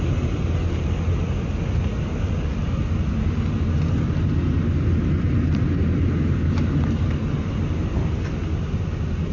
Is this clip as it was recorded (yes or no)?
yes